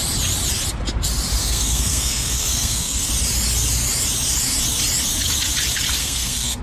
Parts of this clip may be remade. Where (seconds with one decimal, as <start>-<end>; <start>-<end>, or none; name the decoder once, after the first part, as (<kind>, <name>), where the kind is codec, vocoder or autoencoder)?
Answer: 1.4-3.1 (codec, SNAC); 6.0-6.6